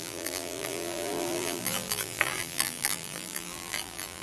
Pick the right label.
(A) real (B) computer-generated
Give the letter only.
B